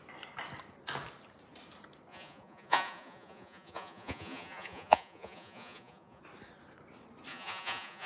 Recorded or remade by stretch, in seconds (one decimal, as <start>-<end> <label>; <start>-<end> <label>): 0.0-2.1 recorded; 2.1-6.2 remade; 6.2-7.3 recorded; 7.3-8.1 remade

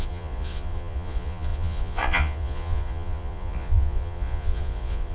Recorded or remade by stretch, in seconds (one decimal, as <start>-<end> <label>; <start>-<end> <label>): 0.0-5.1 remade

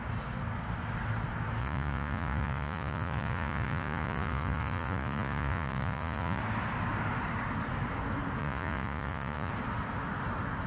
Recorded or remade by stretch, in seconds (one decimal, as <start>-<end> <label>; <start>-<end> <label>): 0.0-1.6 recorded; 1.6-6.4 remade; 6.4-8.4 recorded; 8.4-9.5 remade; 9.5-10.7 recorded

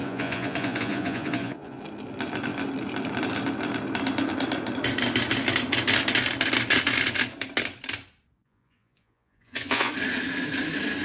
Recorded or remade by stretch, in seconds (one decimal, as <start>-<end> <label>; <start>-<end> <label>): 0.0-1.8 remade; 1.8-8.4 recorded; 8.4-9.9 remade; 9.9-11.0 recorded

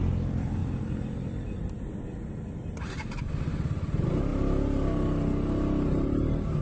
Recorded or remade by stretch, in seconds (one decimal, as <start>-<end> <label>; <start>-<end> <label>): 0.0-6.6 recorded

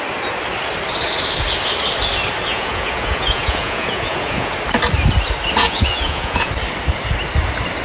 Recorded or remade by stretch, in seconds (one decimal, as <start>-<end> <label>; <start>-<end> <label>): 0.0-2.5 recorded; 2.5-4.5 remade; 4.5-5.6 recorded; 5.6-6.5 remade; 6.5-7.8 recorded